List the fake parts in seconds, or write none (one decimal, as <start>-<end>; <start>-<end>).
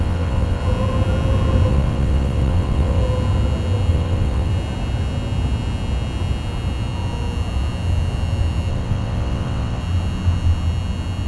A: 0.0-0.6; 1.7-3.0; 3.9-4.5; 8.7-9.8